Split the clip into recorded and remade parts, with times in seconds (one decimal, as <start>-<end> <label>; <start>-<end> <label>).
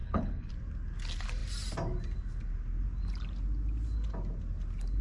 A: 0.0-0.5 remade; 0.5-5.0 recorded